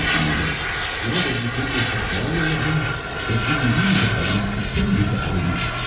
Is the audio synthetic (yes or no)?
no